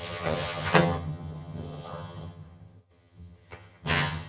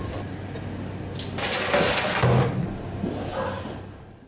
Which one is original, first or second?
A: second